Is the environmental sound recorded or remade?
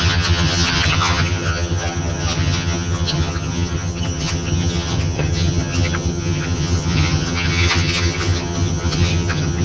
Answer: remade